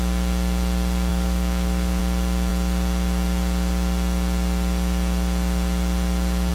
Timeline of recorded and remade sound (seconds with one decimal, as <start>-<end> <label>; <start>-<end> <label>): 0.0-1.1 recorded; 1.1-2.0 remade; 2.0-6.5 recorded